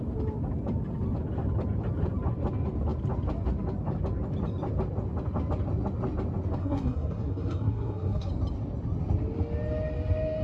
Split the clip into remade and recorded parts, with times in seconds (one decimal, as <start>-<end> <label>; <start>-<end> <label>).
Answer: 0.0-6.6 recorded; 6.6-8.3 remade; 8.3-10.4 recorded